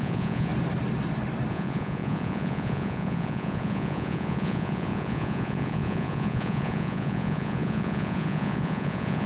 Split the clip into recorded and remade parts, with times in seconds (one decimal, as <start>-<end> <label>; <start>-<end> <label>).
0.0-0.5 remade; 0.5-1.5 recorded; 1.5-9.3 remade